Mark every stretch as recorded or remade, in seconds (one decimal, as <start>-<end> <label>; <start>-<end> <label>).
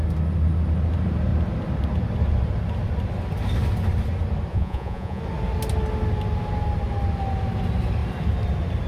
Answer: 0.0-4.5 recorded; 4.5-5.2 remade; 5.2-8.9 recorded